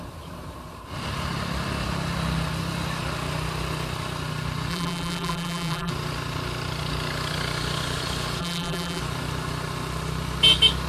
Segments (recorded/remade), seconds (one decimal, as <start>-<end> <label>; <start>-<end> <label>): 0.0-4.7 recorded; 4.7-5.9 remade; 5.9-8.4 recorded; 8.4-9.0 remade; 9.0-10.9 recorded